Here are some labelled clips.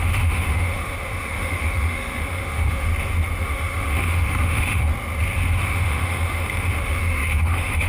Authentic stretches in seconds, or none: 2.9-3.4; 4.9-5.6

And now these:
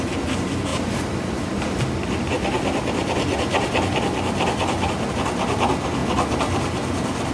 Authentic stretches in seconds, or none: 0.0-7.3